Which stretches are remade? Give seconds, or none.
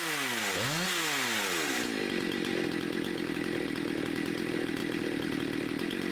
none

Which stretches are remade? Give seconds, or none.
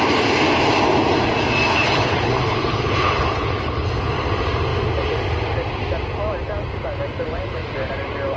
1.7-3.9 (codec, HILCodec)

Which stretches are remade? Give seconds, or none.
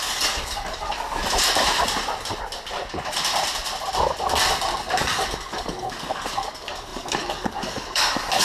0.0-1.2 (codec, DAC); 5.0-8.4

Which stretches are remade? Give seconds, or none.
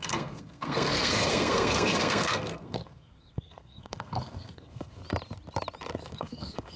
0.0-5.0 (codec, SNAC); 6.0-6.8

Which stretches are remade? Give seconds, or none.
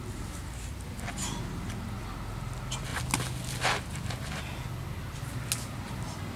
none